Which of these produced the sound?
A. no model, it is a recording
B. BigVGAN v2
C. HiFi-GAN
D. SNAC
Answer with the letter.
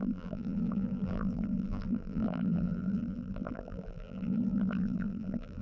B